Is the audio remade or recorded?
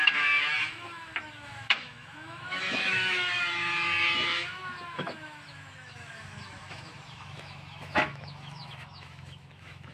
remade